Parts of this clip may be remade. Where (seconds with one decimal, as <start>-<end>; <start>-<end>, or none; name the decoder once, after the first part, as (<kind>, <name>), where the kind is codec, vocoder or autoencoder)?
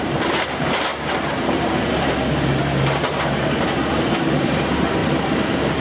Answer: 0.0-5.8 (vocoder, BigVGAN v2)